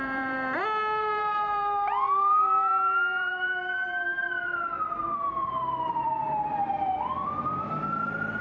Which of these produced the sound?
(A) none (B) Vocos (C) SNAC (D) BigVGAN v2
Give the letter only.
D